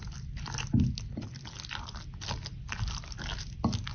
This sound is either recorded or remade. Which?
recorded